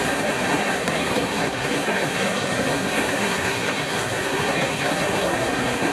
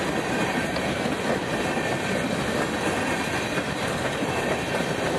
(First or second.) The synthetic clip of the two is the first